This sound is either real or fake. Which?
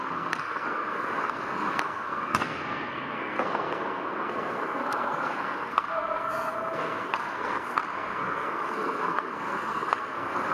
fake